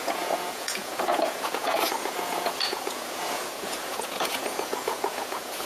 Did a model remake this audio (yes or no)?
yes